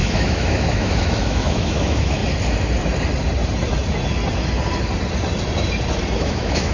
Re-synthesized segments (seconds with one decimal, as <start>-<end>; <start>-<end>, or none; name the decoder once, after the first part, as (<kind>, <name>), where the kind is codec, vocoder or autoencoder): 0.0-2.2 (autoencoder, DAC-VAE); 6.2-6.7